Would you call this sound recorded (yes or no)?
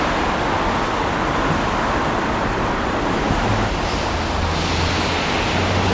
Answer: yes